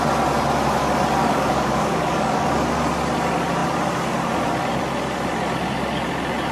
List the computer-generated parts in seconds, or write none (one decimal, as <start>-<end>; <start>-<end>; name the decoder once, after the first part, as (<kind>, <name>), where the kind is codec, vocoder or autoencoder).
1.2-2.5 (codec, DAC)